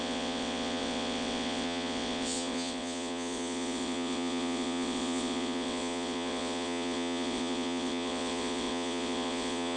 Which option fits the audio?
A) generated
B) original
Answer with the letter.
A